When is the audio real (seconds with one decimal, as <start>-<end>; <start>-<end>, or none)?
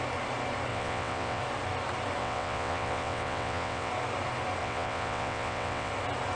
0.0-0.7; 1.4-2.2; 3.9-4.6; 5.9-6.4